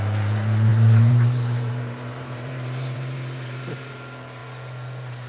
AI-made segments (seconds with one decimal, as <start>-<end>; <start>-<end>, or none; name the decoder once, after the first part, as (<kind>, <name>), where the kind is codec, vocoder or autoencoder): 0.7-3.9 (vocoder, BigVGAN v2)